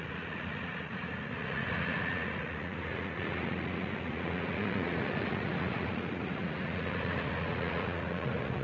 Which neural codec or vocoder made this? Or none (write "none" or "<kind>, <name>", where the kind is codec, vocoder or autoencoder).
vocoder, Vocos